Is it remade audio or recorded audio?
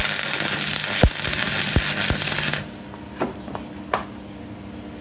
recorded